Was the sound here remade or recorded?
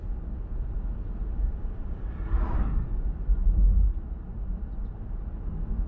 recorded